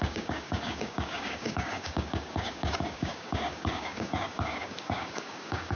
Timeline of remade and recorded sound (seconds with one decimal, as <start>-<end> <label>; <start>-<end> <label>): 0.0-5.7 remade